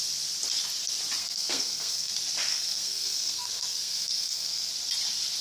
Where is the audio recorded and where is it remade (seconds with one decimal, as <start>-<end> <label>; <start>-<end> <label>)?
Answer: 0.0-1.2 recorded; 1.2-2.1 remade; 2.1-2.5 recorded; 2.5-4.7 remade; 4.7-5.4 recorded